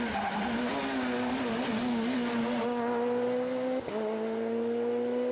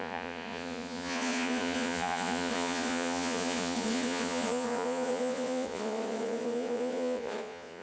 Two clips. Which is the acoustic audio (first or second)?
first